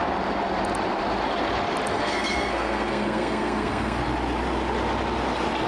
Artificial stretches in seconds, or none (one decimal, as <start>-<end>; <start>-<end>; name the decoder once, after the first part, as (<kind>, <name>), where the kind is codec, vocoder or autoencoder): 1.9-4.0 (codec, SNAC)